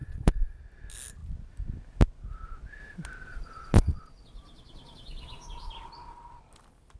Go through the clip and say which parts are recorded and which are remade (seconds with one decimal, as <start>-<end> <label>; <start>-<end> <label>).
0.0-0.6 remade; 0.6-3.3 recorded; 3.3-5.7 remade; 5.7-7.0 recorded